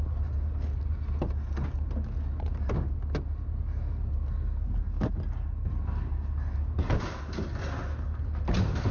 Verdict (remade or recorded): recorded